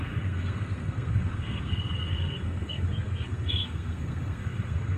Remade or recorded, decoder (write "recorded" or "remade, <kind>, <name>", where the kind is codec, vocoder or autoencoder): remade, codec, SNAC